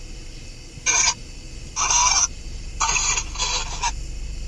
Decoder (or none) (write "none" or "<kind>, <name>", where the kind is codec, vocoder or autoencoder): none